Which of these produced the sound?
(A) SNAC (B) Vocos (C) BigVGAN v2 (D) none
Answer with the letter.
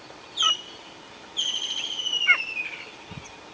D